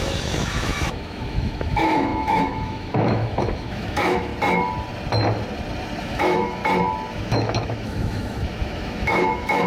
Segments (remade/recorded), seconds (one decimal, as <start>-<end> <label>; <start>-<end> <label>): 0.0-4.3 remade; 4.3-6.0 recorded; 6.0-6.6 remade; 6.6-7.1 recorded; 7.1-9.7 remade